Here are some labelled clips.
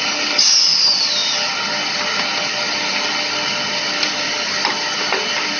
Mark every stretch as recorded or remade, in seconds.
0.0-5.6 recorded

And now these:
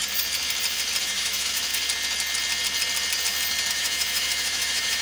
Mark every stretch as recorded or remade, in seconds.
0.0-1.0 recorded; 1.0-1.7 remade; 1.7-3.7 recorded; 3.7-5.0 remade

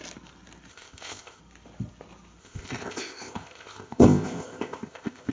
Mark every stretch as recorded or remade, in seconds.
0.0-0.7 recorded; 0.7-1.4 remade; 1.4-2.4 recorded; 2.4-5.3 remade

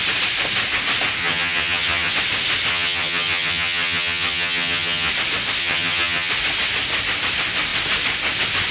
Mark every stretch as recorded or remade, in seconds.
0.0-1.2 recorded; 1.2-2.1 remade; 2.1-2.7 recorded; 2.7-5.1 remade; 5.1-5.6 recorded; 5.6-6.3 remade; 6.3-8.7 recorded

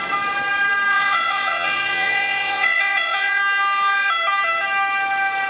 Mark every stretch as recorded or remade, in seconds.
0.0-0.9 recorded; 0.9-3.4 remade; 3.4-5.5 recorded